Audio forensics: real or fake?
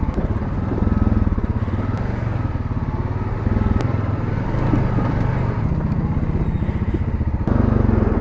real